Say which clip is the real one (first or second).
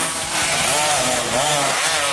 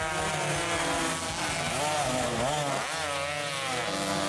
second